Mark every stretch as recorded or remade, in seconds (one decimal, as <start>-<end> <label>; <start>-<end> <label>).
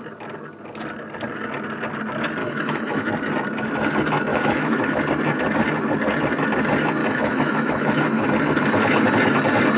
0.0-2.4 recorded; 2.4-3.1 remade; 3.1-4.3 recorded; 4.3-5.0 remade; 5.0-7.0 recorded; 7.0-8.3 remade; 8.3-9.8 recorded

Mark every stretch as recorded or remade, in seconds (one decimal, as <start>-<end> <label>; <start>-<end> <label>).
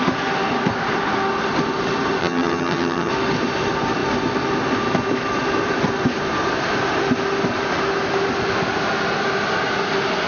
0.0-2.2 recorded; 2.2-3.1 remade; 3.1-10.3 recorded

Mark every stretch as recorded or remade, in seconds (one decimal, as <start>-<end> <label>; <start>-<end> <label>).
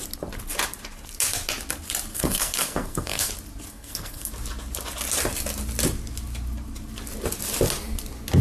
0.0-2.1 recorded; 2.1-3.3 remade; 3.3-3.7 recorded; 3.7-4.3 remade; 4.3-8.4 recorded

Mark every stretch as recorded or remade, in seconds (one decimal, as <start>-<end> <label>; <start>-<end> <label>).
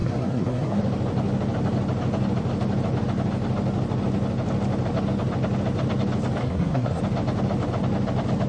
0.0-0.8 remade; 0.8-6.4 recorded; 6.4-7.0 remade; 7.0-8.5 recorded